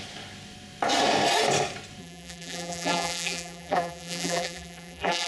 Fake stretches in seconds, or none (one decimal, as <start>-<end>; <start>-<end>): 2.0-5.3